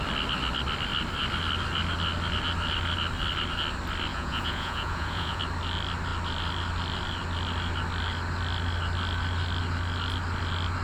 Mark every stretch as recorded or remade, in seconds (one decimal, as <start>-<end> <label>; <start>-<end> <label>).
0.0-4.1 recorded; 4.1-5.4 remade; 5.4-10.8 recorded